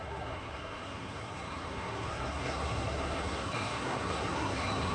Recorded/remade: remade